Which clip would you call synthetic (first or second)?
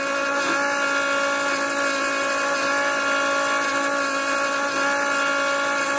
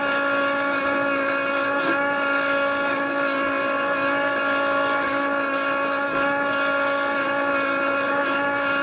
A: second